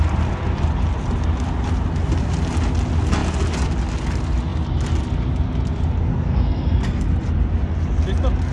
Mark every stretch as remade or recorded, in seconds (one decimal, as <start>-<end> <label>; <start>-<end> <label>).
0.0-6.1 recorded; 6.1-7.0 remade; 7.0-8.5 recorded